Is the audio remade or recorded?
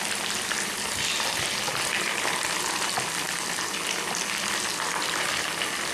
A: recorded